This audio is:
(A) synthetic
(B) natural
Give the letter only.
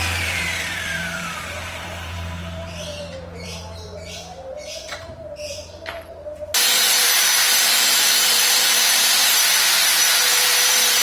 A